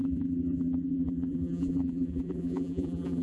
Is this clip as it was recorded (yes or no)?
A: no